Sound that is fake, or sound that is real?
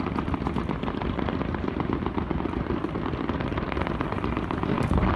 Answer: fake